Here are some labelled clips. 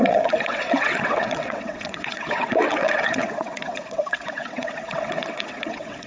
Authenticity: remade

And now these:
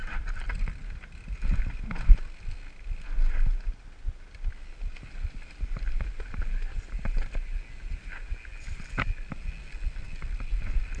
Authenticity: recorded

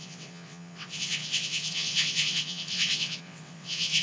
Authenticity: remade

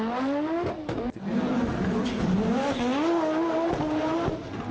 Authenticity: recorded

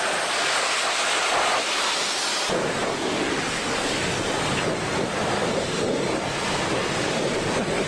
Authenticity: recorded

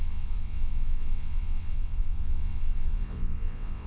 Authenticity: remade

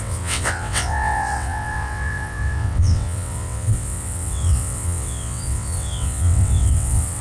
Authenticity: remade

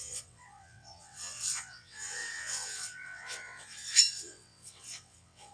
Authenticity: remade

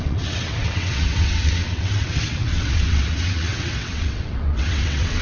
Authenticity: remade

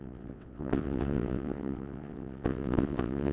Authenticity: remade